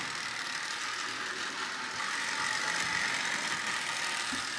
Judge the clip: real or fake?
real